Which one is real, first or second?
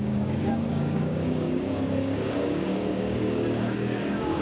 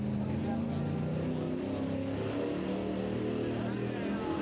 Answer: second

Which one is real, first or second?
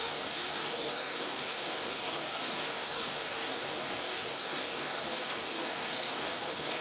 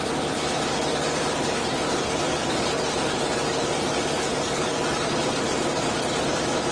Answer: second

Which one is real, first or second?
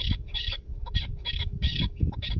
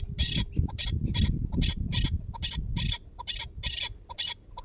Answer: second